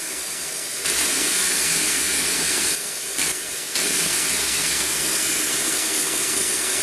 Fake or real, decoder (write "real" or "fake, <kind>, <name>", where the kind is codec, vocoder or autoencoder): fake, codec, SNAC